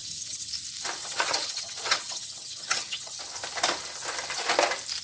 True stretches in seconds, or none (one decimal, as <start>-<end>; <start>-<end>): 0.5-1.0; 3.2-5.0